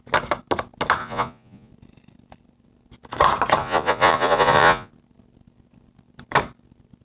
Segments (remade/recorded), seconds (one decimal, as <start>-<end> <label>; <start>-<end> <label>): 0.0-1.0 recorded; 1.0-1.7 remade; 1.7-3.6 recorded; 3.6-4.9 remade; 4.9-7.0 recorded